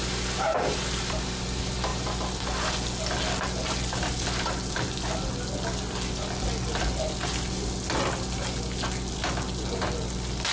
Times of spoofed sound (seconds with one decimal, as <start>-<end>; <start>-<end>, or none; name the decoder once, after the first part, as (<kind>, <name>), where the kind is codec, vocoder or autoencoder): none